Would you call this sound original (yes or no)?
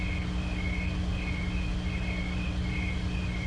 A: yes